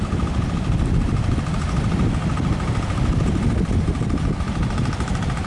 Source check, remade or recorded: recorded